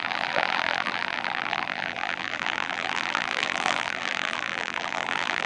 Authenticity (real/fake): fake